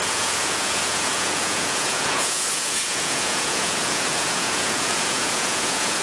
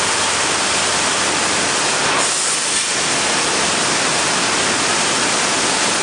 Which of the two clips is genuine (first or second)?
second